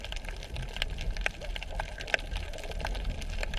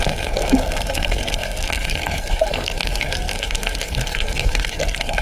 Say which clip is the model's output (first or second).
second